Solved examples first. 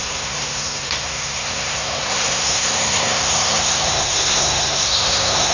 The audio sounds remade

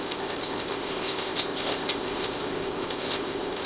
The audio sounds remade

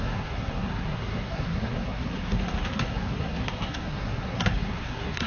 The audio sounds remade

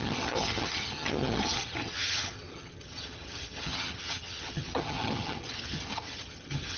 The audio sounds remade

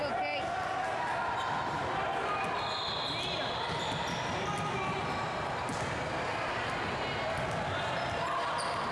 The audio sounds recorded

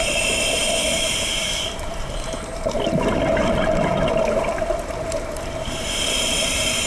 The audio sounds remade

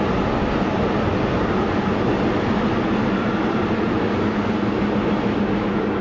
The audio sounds recorded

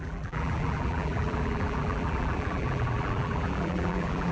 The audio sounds remade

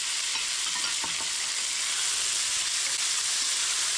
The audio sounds recorded